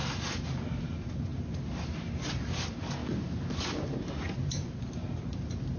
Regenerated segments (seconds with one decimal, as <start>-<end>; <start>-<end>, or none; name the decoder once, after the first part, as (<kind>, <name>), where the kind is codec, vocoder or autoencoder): 0.8-5.8 (vocoder, BigVGAN v2)